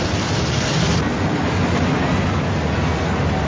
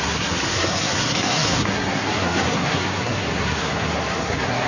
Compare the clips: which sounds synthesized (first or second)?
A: second